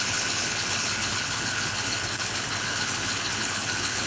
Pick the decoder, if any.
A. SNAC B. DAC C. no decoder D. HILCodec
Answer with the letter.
D